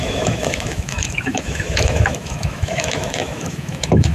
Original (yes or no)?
no